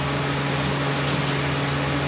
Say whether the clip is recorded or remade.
recorded